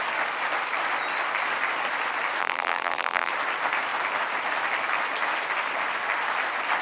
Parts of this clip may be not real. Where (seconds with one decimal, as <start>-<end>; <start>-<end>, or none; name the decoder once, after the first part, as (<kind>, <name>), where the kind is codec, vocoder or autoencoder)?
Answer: 2.4-3.3 (vocoder, BigVGAN v2)